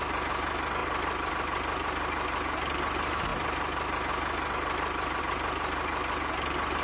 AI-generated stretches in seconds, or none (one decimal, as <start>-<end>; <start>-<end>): none